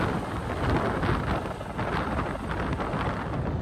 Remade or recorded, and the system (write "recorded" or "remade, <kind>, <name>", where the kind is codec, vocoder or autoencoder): recorded